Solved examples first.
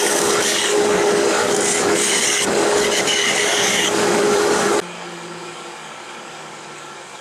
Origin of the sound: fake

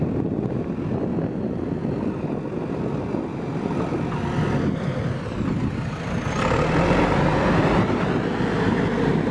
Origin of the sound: real